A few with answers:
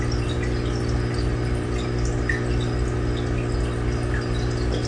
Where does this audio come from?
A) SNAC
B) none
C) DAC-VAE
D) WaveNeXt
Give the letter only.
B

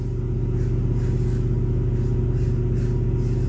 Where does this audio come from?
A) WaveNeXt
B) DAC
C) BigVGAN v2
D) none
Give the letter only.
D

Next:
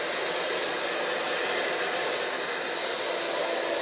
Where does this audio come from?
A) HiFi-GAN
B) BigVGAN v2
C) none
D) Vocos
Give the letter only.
C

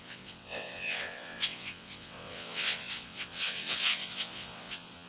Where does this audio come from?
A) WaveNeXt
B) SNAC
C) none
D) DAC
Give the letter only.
A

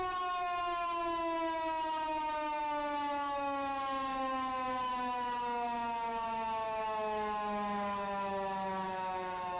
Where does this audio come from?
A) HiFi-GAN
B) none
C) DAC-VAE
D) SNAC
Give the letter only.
C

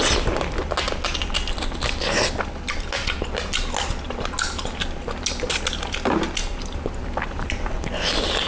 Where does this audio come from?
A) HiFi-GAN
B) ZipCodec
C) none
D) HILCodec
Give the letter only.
C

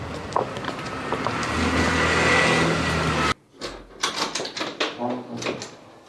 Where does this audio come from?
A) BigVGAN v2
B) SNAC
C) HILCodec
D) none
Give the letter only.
D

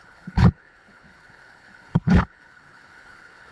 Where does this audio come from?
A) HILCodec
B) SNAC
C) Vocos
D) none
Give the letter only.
A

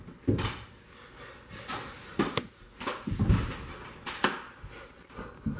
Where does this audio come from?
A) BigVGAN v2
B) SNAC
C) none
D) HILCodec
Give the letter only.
C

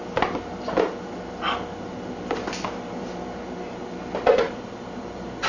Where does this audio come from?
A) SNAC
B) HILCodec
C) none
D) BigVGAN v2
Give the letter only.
C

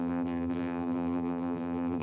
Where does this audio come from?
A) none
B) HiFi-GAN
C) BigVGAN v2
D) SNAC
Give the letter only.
C